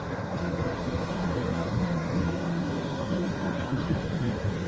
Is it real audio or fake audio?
fake